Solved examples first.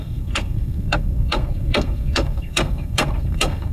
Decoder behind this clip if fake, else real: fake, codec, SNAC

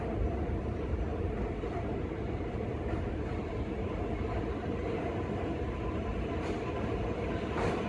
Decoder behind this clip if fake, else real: fake, vocoder, BigVGAN v2